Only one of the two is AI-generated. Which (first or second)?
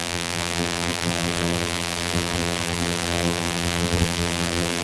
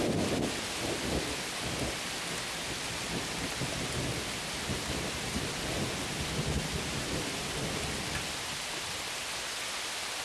first